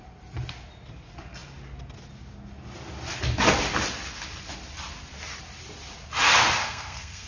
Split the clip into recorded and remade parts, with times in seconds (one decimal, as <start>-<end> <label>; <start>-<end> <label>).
0.0-6.6 recorded; 6.6-7.3 remade

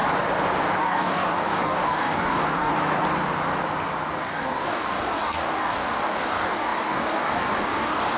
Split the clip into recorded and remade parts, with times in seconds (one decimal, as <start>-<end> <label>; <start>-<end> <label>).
0.0-0.8 recorded; 0.8-2.7 remade; 2.7-4.2 recorded; 4.2-8.2 remade

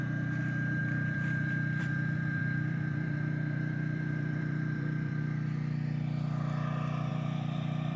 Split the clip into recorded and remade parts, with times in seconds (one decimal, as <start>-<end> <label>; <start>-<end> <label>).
0.0-0.8 recorded; 0.8-5.2 remade; 5.2-7.1 recorded; 7.1-8.0 remade

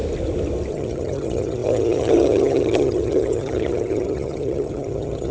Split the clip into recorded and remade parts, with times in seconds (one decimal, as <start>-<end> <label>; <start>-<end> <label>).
0.0-0.7 recorded; 0.7-5.3 remade

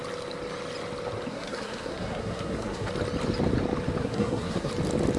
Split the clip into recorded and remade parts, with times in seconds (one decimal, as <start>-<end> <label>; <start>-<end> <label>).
0.0-1.3 recorded; 1.3-2.9 remade; 2.9-4.0 recorded; 4.0-4.7 remade; 4.7-5.2 recorded

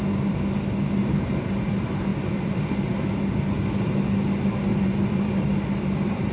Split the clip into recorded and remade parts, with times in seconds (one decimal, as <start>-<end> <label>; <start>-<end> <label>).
0.0-2.1 recorded; 2.1-2.8 remade; 2.8-4.7 recorded; 4.7-6.3 remade